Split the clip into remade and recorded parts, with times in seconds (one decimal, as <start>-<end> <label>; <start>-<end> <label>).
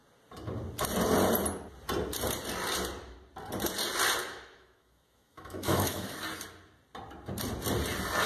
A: 0.0-4.2 recorded; 4.2-6.2 remade; 6.2-8.3 recorded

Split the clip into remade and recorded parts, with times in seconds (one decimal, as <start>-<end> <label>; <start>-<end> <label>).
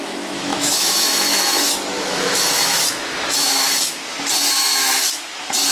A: 0.0-4.0 remade; 4.0-4.5 recorded; 4.5-5.7 remade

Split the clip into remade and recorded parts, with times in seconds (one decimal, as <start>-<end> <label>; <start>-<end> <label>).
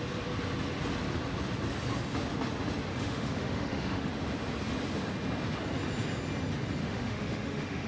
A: 0.0-2.9 recorded; 2.9-4.1 remade; 4.1-6.8 recorded; 6.8-7.9 remade